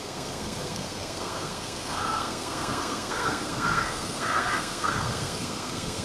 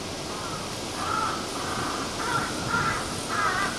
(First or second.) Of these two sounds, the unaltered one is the second